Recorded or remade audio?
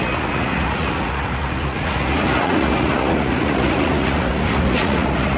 remade